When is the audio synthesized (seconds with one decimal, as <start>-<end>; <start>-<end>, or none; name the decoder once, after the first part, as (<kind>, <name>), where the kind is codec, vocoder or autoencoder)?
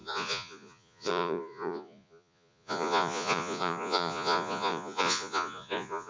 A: 0.0-6.1 (vocoder, Vocos)